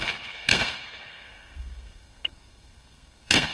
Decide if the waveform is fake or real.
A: fake